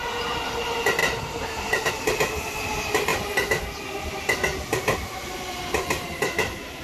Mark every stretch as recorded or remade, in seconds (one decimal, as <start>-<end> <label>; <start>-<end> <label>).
0.0-1.0 recorded; 1.0-1.9 remade; 1.9-6.8 recorded